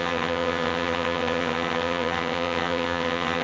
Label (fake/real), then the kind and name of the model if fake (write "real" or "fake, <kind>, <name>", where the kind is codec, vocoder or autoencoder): fake, vocoder, HiFi-GAN